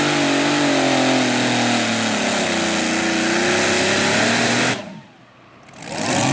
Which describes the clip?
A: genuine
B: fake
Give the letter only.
A